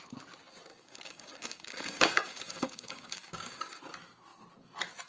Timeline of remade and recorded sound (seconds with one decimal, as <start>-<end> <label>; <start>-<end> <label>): 0.0-0.7 recorded; 0.7-3.8 remade; 3.8-5.1 recorded